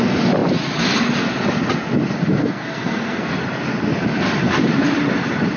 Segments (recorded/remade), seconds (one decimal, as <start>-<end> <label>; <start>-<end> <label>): 0.0-2.4 recorded; 2.4-3.3 remade; 3.3-5.6 recorded